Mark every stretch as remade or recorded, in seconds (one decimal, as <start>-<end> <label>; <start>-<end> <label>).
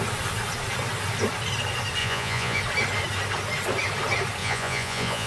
0.0-2.0 recorded; 2.0-2.6 remade; 2.6-4.4 recorded; 4.4-5.3 remade